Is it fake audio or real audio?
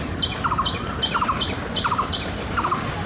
fake